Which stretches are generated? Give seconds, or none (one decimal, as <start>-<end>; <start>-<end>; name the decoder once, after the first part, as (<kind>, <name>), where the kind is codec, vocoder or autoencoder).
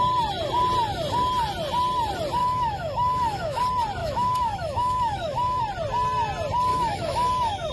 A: 2.4-3.6 (autoencoder, DAC-VAE); 4.0-5.6; 6.7-7.7